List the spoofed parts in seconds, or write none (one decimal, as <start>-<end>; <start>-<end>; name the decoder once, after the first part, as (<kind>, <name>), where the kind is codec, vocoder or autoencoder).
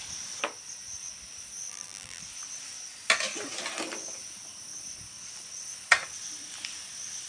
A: 1.7-2.2 (vocoder, BigVGAN v2)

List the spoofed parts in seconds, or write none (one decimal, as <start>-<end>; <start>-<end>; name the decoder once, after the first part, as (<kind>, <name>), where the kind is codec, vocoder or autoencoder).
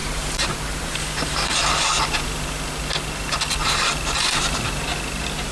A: 0.0-1.8 (vocoder, BigVGAN v2); 3.6-4.8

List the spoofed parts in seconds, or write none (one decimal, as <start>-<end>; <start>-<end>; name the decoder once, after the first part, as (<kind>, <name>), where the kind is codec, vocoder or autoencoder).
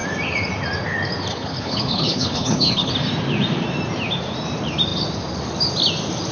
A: 1.3-2.9 (codec, HILCodec)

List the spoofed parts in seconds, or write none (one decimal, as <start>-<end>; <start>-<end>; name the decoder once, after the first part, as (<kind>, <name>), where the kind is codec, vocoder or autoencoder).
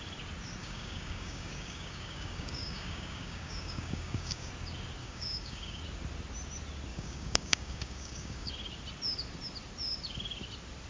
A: 0.6-4.5 (codec, DAC); 5.0-5.8; 6.9-8.5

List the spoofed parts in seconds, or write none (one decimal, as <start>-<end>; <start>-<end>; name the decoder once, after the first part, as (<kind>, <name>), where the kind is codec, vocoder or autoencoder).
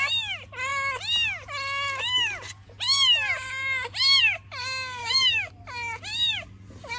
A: 5.0-5.5 (autoencoder, DAC-VAE)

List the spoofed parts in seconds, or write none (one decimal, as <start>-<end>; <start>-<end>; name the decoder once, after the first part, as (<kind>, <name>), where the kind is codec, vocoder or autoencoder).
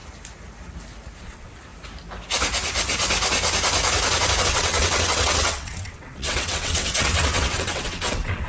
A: 1.2-1.7 (vocoder, WaveNeXt); 4.4-8.5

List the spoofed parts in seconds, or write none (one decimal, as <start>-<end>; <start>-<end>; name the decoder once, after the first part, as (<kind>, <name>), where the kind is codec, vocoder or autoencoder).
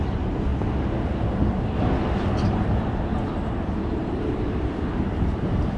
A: 0.0-0.5 (vocoder, BigVGAN v2); 3.9-5.8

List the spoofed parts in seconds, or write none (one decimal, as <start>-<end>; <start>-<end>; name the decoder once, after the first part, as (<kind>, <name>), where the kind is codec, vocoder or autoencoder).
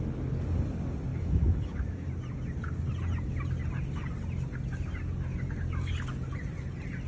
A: 1.1-2.1 (autoencoder, DAC-VAE)